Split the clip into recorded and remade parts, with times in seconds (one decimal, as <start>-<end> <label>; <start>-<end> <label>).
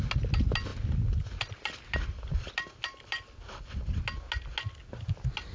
0.0-5.5 recorded